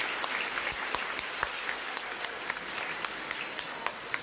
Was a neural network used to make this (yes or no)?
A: no